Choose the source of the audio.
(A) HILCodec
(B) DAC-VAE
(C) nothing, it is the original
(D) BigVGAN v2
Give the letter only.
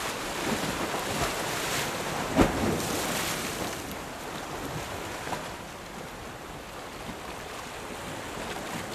C